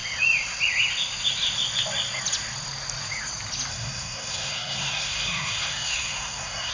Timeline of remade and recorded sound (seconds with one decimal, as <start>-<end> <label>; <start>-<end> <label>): 0.0-3.7 recorded; 3.7-6.7 remade